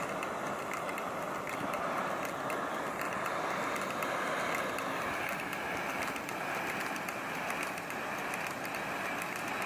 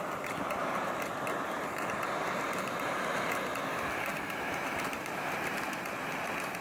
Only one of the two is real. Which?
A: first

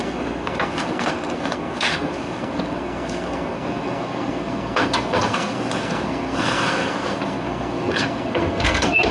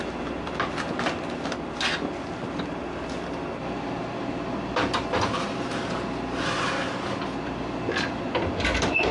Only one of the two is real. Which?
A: second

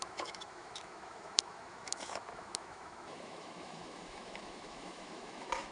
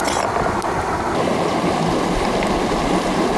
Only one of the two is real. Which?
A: second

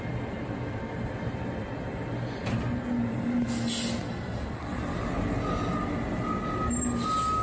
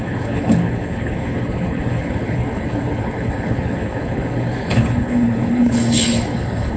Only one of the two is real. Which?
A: first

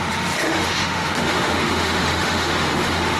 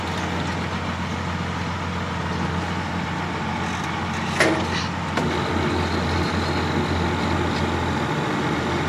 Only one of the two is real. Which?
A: second